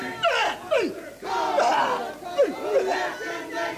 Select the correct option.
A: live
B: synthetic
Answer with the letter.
A